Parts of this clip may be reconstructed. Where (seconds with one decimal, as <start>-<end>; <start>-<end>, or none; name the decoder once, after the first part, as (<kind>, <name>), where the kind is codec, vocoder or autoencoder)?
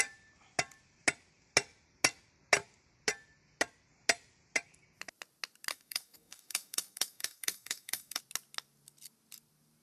5.7-8.2 (codec, DAC)